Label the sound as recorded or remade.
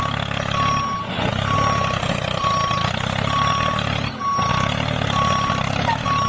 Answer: recorded